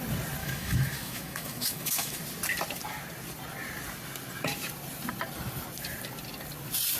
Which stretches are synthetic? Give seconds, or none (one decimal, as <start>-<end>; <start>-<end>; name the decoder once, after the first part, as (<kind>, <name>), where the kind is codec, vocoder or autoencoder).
0.4-2.2 (autoencoder, DAC-VAE)